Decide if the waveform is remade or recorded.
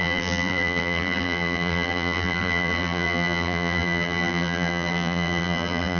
remade